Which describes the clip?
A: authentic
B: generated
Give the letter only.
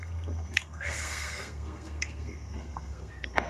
B